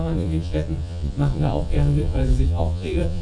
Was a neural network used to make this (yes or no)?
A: yes